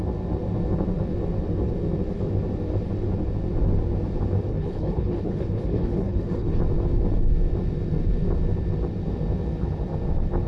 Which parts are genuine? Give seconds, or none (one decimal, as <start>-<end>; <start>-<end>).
0.0-4.5; 6.6-10.5